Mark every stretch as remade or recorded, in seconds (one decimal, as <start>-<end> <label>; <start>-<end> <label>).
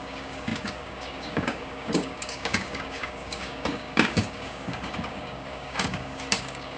0.0-6.8 remade